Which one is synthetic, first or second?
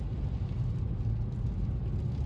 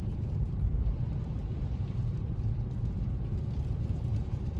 second